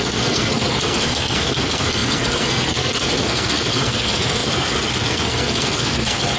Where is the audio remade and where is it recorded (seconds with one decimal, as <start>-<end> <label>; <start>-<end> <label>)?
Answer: 0.0-6.4 remade